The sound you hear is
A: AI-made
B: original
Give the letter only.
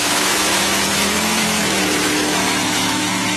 A